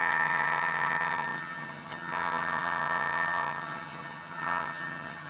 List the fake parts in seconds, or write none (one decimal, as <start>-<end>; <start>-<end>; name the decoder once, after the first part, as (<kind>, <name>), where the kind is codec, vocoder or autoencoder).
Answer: 0.0-5.3 (vocoder, HiFi-GAN)